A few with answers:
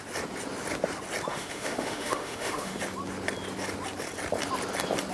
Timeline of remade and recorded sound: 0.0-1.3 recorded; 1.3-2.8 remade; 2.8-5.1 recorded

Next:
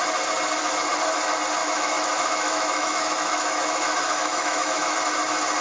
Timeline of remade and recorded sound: 0.0-1.6 recorded; 1.6-5.0 remade; 5.0-5.6 recorded

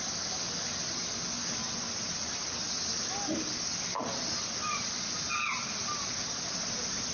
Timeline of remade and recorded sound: 0.0-7.1 recorded

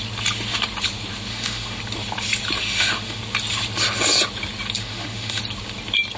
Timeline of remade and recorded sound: 0.0-1.3 recorded; 1.3-1.8 remade; 1.8-2.6 recorded; 2.6-3.2 remade; 3.2-4.8 recorded; 4.8-5.4 remade; 5.4-6.2 recorded

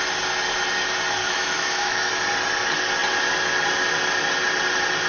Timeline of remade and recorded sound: 0.0-1.2 recorded; 1.2-2.1 remade; 2.1-5.1 recorded